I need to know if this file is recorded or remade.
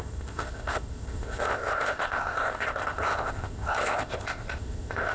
remade